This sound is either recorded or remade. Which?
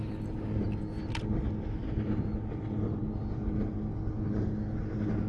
recorded